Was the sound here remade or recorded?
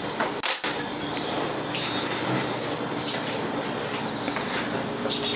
recorded